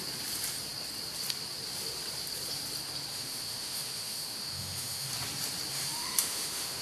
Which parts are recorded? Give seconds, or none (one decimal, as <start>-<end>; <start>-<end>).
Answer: 0.0-3.1; 5.1-5.7